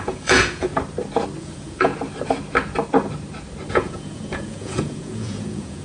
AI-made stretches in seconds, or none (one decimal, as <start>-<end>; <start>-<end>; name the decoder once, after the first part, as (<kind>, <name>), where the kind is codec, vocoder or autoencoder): 0.0-0.7 (vocoder, Vocos); 1.4-1.9; 3.7-5.8